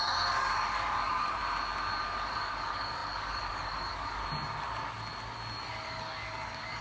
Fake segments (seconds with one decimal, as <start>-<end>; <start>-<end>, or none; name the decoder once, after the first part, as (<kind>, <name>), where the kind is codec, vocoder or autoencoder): 0.0-1.4 (codec, DAC); 2.0-4.2; 5.7-6.8